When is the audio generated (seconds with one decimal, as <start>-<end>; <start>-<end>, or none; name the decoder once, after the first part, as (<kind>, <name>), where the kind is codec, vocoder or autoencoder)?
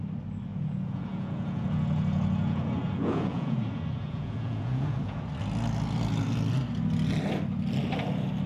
0.5-5.3 (vocoder, Vocos)